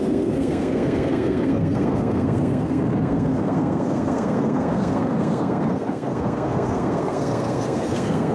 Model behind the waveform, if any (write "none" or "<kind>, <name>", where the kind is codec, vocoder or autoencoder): codec, SNAC